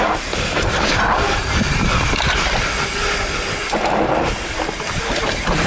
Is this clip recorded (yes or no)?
yes